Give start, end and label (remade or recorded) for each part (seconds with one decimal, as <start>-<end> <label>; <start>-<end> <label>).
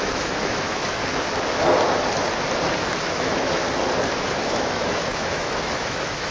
0.0-1.0 remade; 1.0-2.9 recorded; 2.9-3.6 remade; 3.6-4.3 recorded; 4.3-6.3 remade